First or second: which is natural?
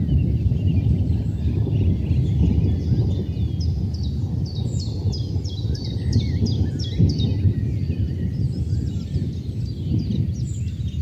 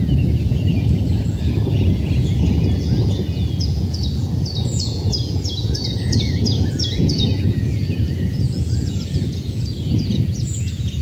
first